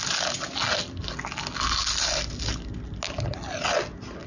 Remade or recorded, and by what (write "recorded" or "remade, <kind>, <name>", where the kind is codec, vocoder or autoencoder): recorded